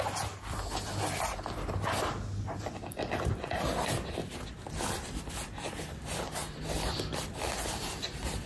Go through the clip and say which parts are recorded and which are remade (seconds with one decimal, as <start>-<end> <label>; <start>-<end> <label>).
0.0-8.5 recorded